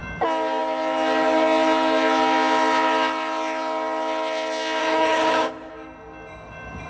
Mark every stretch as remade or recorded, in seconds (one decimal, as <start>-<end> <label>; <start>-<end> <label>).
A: 0.0-4.8 recorded; 4.8-5.7 remade; 5.7-6.9 recorded